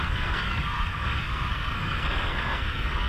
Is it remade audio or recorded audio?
remade